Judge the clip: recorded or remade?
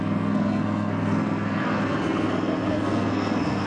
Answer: remade